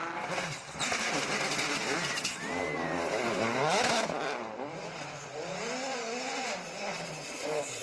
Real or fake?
real